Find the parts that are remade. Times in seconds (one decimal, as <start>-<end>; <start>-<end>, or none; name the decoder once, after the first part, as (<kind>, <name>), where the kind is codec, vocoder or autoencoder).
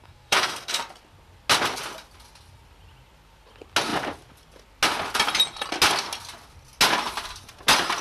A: 0.0-0.8 (codec, SNAC)